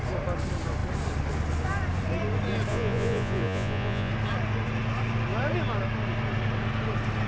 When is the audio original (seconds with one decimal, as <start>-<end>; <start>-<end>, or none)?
0.0-2.7; 4.1-7.3